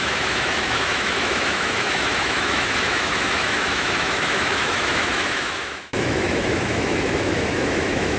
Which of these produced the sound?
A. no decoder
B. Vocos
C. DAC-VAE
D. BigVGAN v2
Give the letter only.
C